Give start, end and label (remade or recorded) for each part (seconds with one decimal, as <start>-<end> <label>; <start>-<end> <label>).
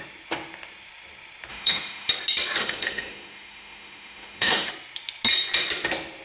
0.0-1.5 recorded; 1.5-2.1 remade; 2.1-2.6 recorded; 2.6-4.7 remade; 4.7-6.2 recorded